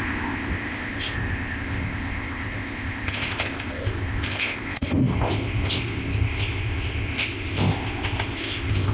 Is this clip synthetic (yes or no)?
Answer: yes